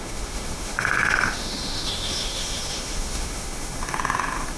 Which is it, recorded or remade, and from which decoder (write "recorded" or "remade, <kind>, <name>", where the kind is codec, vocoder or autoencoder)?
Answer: remade, autoencoder, DAC-VAE